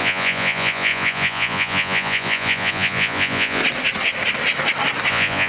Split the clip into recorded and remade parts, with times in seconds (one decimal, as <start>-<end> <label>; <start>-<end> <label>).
0.0-3.6 remade; 3.6-5.1 recorded; 5.1-5.5 remade